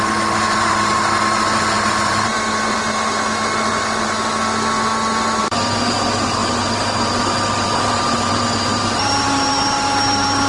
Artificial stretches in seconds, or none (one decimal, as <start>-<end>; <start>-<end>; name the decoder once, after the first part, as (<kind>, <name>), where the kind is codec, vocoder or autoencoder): 0.0-2.8 (vocoder, BigVGAN v2); 5.4-10.5